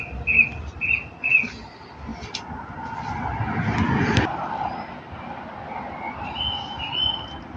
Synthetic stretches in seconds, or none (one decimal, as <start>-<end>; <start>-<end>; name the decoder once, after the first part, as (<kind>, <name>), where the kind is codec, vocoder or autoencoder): none